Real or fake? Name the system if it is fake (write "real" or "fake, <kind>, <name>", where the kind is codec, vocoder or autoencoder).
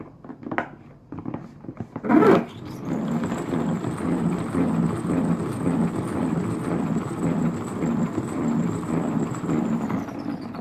real